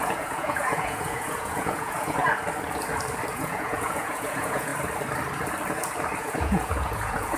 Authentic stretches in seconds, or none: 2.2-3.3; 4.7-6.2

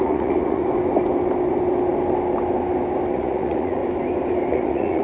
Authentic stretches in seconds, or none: 0.6-3.1; 3.8-4.5

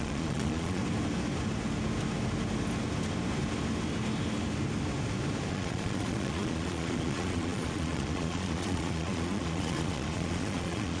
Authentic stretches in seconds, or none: 0.8-5.5

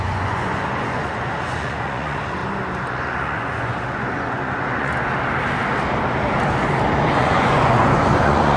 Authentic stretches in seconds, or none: 2.4-2.9; 4.9-7.1